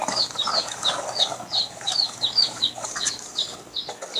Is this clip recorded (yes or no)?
no